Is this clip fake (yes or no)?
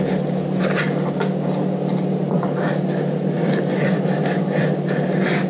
no